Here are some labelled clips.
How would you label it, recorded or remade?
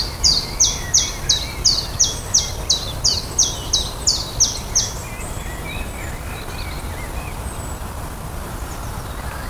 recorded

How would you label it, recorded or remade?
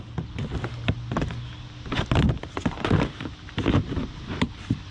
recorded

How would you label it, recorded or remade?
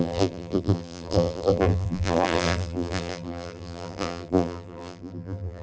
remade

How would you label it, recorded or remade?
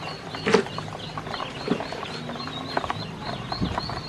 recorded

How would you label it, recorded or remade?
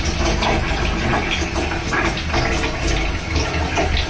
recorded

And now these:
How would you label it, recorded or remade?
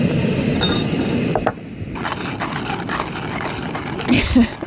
recorded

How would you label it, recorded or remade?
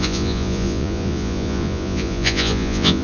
remade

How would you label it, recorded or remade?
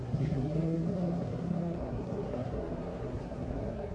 remade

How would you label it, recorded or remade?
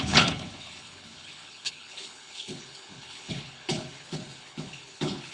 remade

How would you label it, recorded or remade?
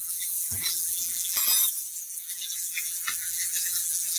remade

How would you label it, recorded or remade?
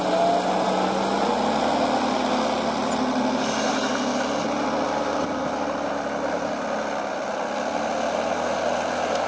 recorded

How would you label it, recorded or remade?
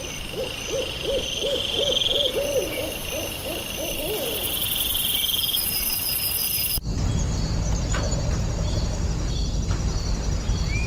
recorded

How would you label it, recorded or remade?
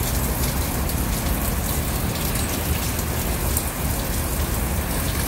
recorded